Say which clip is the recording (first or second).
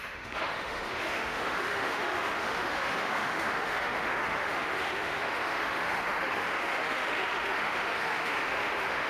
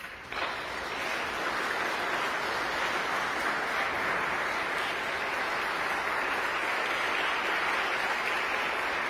second